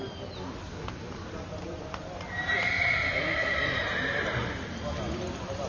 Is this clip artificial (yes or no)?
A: no